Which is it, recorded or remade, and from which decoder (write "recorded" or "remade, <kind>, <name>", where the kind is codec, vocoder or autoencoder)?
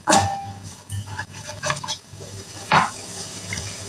remade, codec, DAC